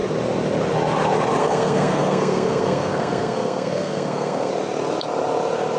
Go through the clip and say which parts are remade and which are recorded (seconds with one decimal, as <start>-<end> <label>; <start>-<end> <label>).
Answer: 0.0-1.4 recorded; 1.4-4.5 remade; 4.5-5.8 recorded